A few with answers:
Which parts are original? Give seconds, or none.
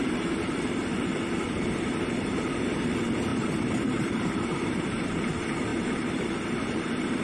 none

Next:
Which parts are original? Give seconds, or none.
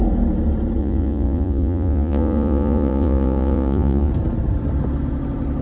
0.0-0.8; 4.1-5.6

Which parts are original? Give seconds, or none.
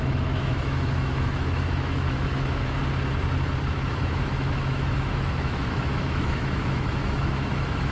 2.8-4.0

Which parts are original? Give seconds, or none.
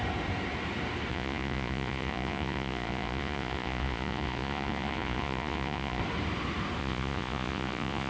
0.0-1.1; 6.0-6.8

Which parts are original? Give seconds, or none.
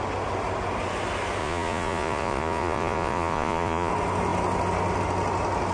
0.0-1.4; 3.9-5.7